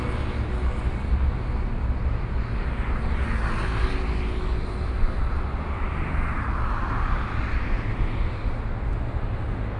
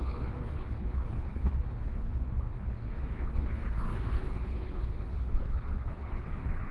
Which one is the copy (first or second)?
second